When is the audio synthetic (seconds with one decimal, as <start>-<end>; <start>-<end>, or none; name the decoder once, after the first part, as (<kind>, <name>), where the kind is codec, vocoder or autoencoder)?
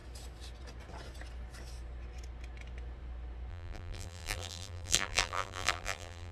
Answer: 3.5-6.3 (vocoder, BigVGAN v2)